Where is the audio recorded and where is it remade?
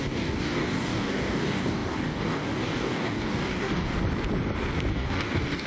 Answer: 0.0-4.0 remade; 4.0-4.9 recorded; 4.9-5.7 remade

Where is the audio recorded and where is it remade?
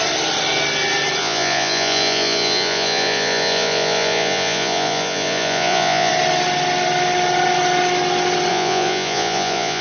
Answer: 0.0-1.2 recorded; 1.2-6.1 remade; 6.1-8.5 recorded; 8.5-9.8 remade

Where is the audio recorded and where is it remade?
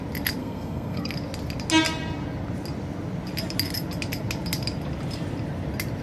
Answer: 0.0-0.4 recorded; 0.4-1.1 remade; 1.1-6.0 recorded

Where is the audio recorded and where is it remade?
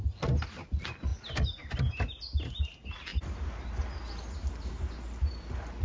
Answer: 0.0-5.8 recorded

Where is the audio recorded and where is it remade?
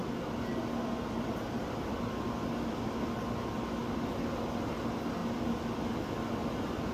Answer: 0.0-6.9 recorded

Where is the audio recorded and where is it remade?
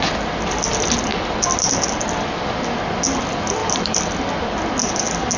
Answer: 0.0-5.4 recorded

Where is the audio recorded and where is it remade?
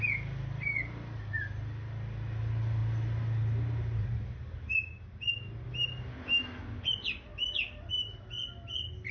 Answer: 0.0-9.1 recorded